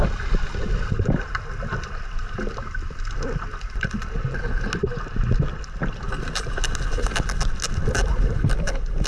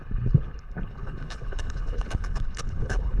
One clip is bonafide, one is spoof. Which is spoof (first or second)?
second